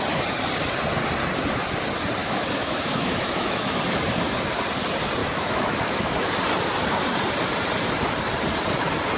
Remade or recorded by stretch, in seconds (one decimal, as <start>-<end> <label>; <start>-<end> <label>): 0.0-2.2 recorded; 2.2-3.8 remade; 3.8-5.2 recorded; 5.2-6.3 remade; 6.3-9.2 recorded